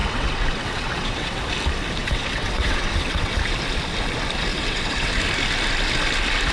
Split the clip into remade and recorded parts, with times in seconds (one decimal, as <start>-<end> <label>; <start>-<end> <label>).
0.0-1.4 remade; 1.4-2.0 recorded; 2.0-3.4 remade; 3.4-4.5 recorded; 4.5-5.2 remade; 5.2-6.5 recorded